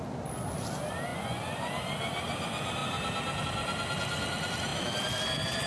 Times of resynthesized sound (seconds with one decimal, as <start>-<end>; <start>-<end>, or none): 1.1-1.7